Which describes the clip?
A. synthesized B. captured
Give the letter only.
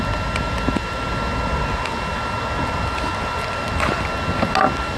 B